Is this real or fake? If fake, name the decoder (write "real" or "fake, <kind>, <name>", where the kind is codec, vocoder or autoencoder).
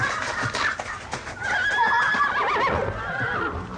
real